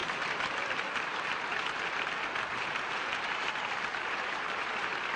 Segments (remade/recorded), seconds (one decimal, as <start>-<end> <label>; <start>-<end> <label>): 0.0-0.5 remade; 0.5-2.5 recorded; 2.5-3.2 remade; 3.2-3.9 recorded; 3.9-5.2 remade